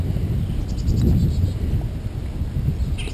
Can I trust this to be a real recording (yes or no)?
yes